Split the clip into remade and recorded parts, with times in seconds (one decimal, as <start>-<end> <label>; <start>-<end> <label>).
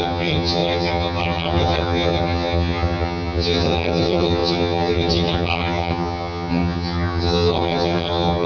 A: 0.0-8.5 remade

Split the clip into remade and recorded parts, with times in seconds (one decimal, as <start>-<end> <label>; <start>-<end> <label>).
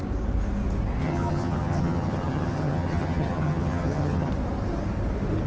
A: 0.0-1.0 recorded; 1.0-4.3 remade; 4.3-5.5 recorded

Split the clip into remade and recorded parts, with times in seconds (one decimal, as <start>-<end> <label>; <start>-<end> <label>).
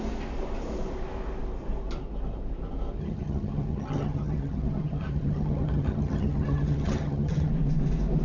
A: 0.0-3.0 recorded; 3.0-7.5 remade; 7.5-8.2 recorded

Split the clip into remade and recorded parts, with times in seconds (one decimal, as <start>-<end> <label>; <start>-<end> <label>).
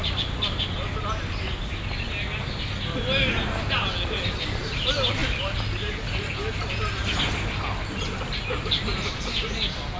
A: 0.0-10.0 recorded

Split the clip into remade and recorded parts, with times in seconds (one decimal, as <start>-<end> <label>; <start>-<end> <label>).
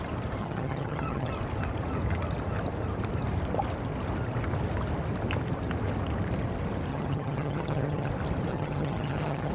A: 0.0-0.4 recorded; 0.4-1.3 remade; 1.3-6.9 recorded; 6.9-8.1 remade; 8.1-8.5 recorded; 8.5-9.5 remade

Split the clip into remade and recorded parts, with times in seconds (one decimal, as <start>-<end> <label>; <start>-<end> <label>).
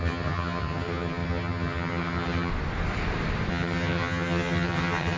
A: 0.0-2.5 remade; 2.5-3.5 recorded; 3.5-5.2 remade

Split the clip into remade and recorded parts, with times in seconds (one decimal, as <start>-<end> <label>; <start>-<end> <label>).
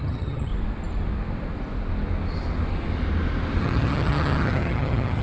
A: 0.0-0.5 remade; 0.5-3.6 recorded; 3.6-5.2 remade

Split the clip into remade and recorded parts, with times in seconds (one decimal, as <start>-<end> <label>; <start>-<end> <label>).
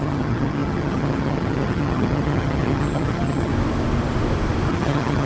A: 0.0-3.5 remade; 3.5-4.7 recorded; 4.7-5.3 remade